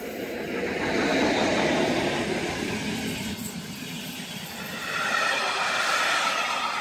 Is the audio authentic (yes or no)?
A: yes